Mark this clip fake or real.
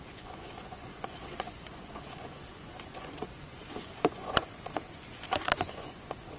fake